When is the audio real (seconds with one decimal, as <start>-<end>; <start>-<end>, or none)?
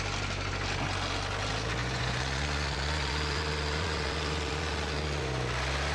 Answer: 0.0-1.8; 5.2-5.9